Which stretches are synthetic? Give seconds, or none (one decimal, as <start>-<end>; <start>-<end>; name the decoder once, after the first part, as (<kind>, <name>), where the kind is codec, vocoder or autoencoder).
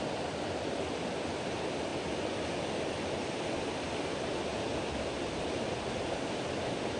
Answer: none